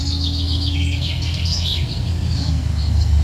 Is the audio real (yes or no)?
no